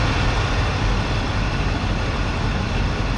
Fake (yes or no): no